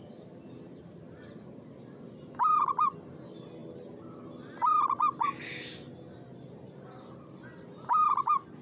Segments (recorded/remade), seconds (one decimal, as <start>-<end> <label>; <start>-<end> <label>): 0.0-8.6 recorded